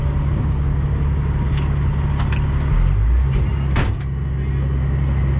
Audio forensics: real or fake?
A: real